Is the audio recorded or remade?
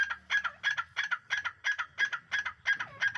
recorded